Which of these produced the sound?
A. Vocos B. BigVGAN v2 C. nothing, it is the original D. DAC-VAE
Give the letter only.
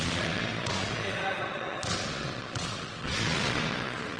A